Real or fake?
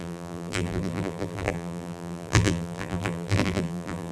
fake